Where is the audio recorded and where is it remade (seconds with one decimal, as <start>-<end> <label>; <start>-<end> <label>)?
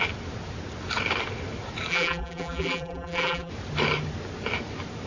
0.0-1.9 recorded; 1.9-3.5 remade; 3.5-5.1 recorded